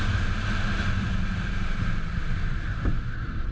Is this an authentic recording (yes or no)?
yes